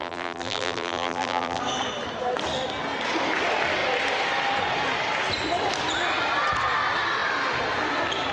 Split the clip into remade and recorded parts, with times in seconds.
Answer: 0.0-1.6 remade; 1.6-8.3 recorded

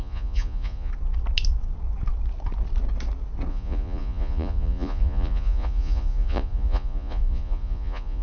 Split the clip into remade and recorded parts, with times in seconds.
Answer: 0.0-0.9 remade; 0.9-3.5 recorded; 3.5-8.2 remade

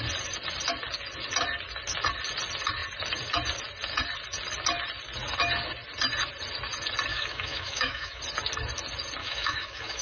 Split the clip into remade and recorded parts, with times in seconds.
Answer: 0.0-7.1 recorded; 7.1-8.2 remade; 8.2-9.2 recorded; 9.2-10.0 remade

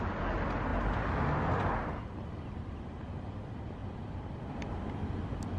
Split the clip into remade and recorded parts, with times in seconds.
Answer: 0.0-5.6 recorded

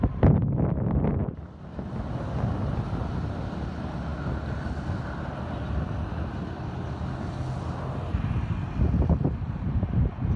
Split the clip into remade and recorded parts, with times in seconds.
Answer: 0.0-10.4 recorded

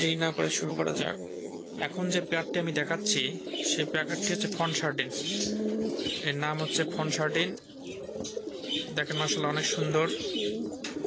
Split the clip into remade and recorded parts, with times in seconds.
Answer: 0.0-1.8 remade; 1.8-11.1 recorded

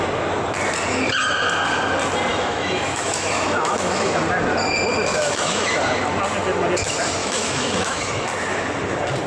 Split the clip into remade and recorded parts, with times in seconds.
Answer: 0.0-2.3 recorded; 2.3-4.2 remade; 4.2-5.1 recorded; 5.1-5.8 remade; 5.8-7.2 recorded; 7.2-8.0 remade; 8.0-9.3 recorded